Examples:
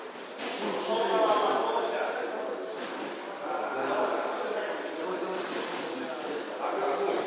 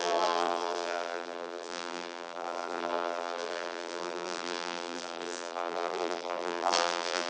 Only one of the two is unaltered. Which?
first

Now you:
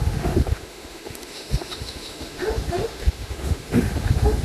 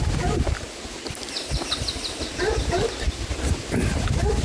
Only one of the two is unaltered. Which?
second